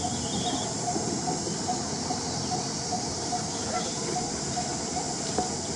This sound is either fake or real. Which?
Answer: real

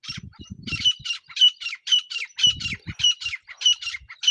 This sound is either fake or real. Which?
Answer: real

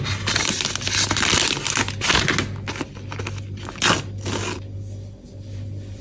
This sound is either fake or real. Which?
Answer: real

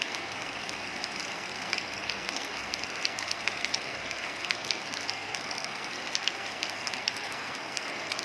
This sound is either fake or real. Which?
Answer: fake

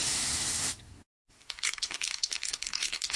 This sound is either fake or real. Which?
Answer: fake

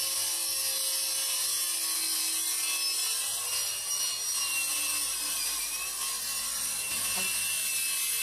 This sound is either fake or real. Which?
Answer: real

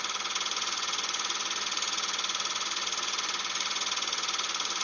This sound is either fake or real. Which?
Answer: fake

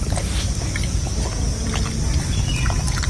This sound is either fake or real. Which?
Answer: real